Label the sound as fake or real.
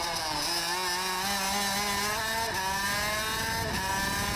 real